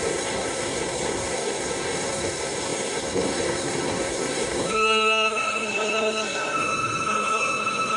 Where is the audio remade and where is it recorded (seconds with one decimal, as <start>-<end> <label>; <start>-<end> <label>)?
0.0-8.0 remade